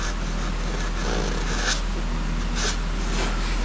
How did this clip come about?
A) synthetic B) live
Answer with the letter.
B